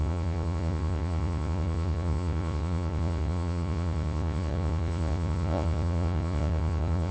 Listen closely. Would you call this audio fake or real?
fake